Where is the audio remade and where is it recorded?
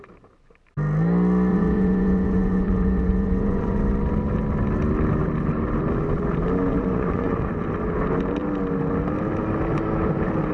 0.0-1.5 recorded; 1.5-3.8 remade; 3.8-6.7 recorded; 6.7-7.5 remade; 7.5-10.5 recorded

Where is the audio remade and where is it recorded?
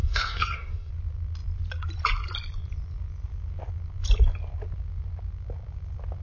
0.0-0.9 remade; 0.9-6.2 recorded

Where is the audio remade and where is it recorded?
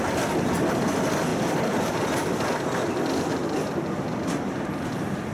0.0-1.3 recorded; 1.3-2.3 remade; 2.3-3.4 recorded; 3.4-4.7 remade; 4.7-5.3 recorded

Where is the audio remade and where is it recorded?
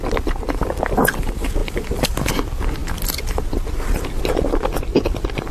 0.0-5.5 recorded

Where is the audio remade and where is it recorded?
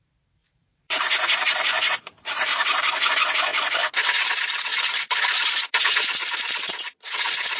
0.0-0.4 recorded; 0.4-3.1 remade; 3.1-4.7 recorded; 4.7-6.6 remade; 6.6-7.6 recorded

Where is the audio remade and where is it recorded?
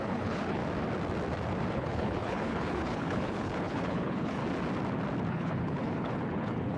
0.0-0.6 remade; 0.6-1.7 recorded; 1.7-4.4 remade; 4.4-5.3 recorded; 5.3-6.8 remade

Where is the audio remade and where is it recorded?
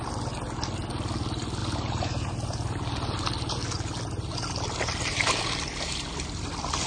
0.0-6.9 recorded